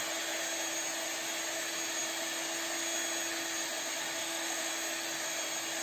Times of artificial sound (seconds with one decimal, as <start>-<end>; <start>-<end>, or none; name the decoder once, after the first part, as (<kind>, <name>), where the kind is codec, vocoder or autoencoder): 4.2-4.7 (autoencoder, DAC-VAE)